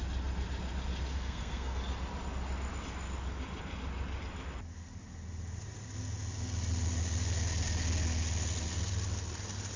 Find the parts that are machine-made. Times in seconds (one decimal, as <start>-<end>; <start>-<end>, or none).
1.1-1.8